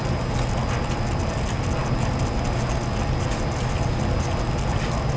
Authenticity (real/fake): real